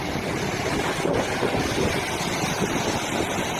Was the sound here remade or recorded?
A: recorded